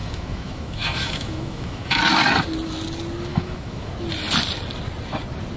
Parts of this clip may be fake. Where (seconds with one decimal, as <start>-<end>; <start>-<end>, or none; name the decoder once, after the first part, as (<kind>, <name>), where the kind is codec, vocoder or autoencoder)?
0.0-2.0 (autoencoder, DAC-VAE); 3.3-3.9